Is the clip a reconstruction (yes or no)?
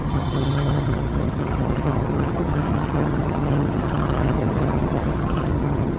yes